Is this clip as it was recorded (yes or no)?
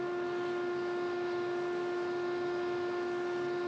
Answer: yes